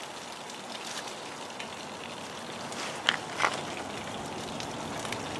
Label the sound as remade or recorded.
recorded